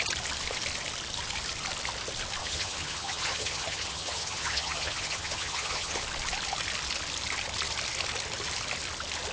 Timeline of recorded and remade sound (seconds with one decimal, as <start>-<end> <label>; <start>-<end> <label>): 0.0-2.4 recorded; 2.4-6.0 remade; 6.0-9.3 recorded